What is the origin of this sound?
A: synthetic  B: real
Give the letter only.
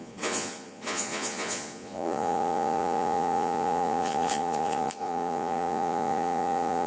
A